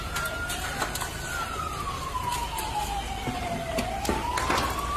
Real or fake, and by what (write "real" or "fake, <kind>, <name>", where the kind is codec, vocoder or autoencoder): real